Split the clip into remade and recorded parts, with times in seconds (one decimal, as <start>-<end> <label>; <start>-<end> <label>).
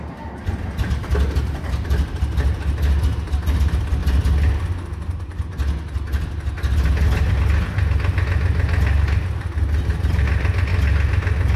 0.0-11.6 recorded